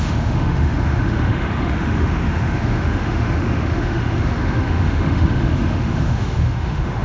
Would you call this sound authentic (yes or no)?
no